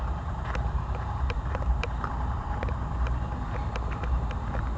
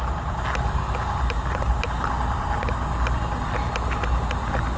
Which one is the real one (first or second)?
second